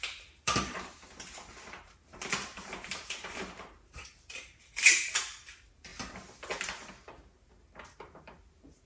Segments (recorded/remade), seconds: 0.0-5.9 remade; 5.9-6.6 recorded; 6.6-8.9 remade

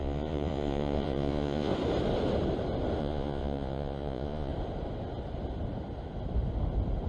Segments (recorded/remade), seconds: 0.0-1.7 remade; 1.7-3.0 recorded; 3.0-4.5 remade; 4.5-7.1 recorded

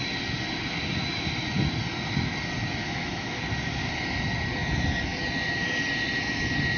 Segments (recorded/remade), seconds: 0.0-2.8 recorded; 2.8-3.4 remade; 3.4-6.8 recorded

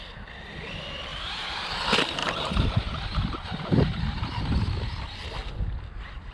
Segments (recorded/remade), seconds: 0.0-1.1 recorded; 1.1-1.7 remade; 1.7-2.2 recorded; 2.2-4.4 remade; 4.4-6.3 recorded

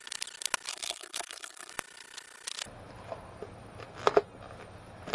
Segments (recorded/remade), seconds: 0.0-0.7 recorded; 0.7-1.7 remade; 1.7-5.1 recorded

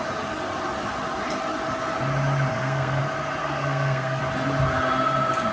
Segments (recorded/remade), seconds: 0.0-2.5 recorded; 2.5-3.0 remade; 3.0-3.4 recorded; 3.4-4.2 remade; 4.2-5.5 recorded

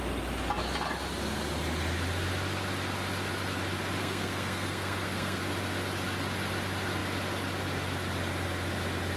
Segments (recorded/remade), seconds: 0.0-4.0 recorded; 4.0-5.4 remade; 5.4-9.2 recorded